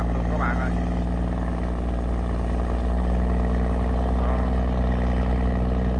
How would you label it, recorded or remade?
recorded